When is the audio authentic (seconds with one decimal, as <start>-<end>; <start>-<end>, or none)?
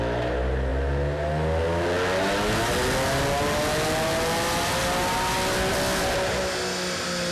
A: 0.0-7.3